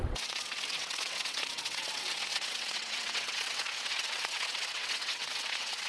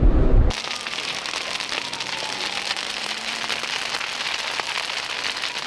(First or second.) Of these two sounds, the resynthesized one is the first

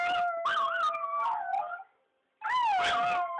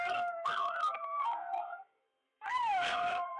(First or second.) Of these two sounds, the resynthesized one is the second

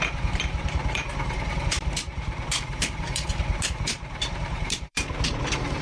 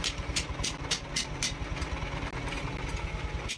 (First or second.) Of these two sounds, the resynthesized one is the first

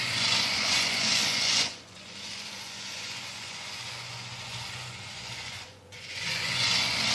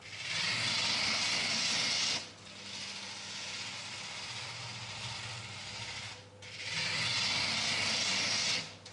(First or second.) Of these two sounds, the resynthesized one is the first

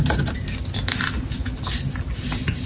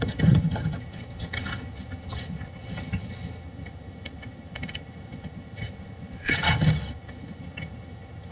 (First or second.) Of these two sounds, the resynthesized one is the second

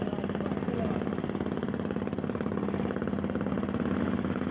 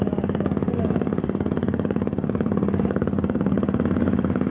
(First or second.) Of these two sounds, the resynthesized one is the second